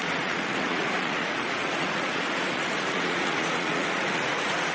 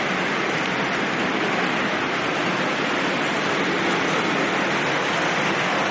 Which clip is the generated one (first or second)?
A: first